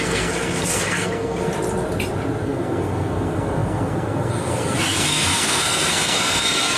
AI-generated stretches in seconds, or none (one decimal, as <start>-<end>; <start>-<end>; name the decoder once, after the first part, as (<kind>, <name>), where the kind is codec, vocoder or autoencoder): 0.0-1.5 (codec, SNAC); 2.4-6.8